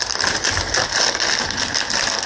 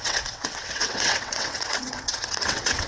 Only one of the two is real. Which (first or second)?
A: first